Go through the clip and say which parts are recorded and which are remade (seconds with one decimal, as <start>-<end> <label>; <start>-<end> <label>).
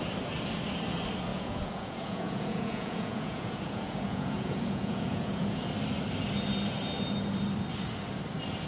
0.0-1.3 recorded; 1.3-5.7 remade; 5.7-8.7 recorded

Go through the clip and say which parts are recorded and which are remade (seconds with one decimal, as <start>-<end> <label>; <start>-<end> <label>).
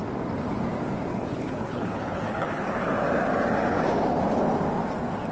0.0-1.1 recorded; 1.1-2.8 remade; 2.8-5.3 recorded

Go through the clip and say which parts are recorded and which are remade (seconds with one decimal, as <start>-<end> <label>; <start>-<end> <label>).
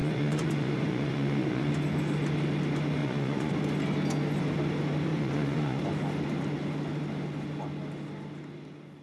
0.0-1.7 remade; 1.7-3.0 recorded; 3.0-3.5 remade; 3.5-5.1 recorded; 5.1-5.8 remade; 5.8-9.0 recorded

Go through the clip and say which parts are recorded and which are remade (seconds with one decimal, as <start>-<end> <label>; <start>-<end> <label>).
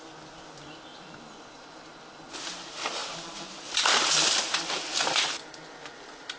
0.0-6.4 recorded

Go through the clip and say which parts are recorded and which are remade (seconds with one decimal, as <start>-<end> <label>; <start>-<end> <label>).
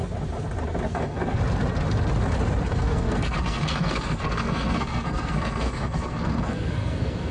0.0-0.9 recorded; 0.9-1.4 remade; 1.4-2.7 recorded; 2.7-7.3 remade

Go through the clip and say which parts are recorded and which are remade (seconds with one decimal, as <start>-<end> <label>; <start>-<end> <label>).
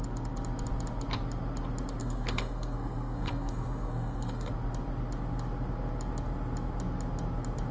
0.0-2.0 recorded; 2.0-4.5 remade; 4.5-7.7 recorded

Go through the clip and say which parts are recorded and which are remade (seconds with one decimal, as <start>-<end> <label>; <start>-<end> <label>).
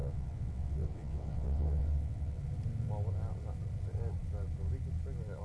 0.0-2.4 remade; 2.4-5.4 recorded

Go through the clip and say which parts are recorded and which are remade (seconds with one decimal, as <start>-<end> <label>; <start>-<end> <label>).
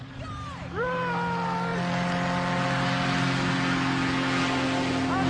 0.0-5.3 recorded